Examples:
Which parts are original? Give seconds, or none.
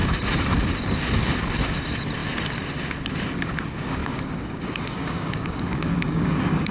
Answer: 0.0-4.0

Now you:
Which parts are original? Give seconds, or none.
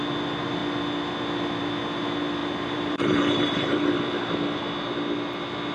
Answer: 0.0-2.4; 3.9-5.7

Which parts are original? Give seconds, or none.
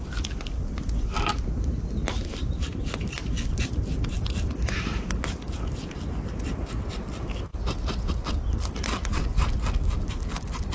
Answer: 0.0-10.7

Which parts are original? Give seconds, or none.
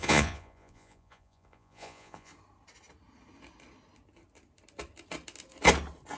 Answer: 2.3-6.2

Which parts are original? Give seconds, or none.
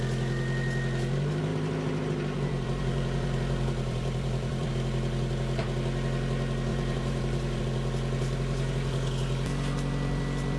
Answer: 0.0-1.5; 4.7-6.7; 7.6-10.6